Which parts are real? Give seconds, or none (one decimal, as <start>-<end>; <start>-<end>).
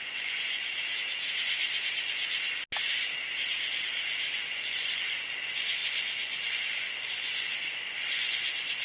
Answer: 0.7-4.2